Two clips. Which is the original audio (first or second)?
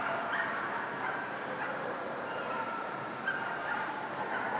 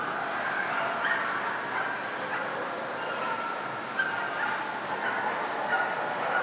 second